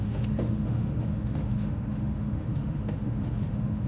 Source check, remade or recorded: remade